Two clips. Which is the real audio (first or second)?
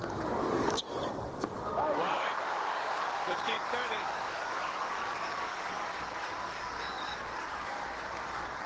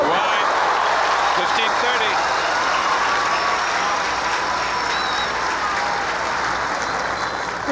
second